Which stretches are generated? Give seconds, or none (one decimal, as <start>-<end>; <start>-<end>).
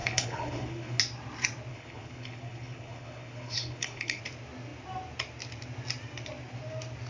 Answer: 0.0-1.0; 1.7-4.2